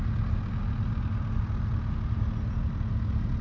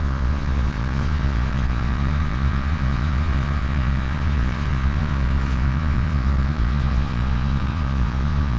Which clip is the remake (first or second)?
second